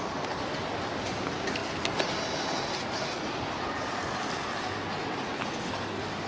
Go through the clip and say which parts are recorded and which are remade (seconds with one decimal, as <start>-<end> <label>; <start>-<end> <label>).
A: 0.0-6.3 recorded